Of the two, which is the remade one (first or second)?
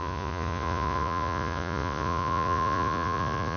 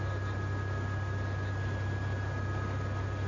first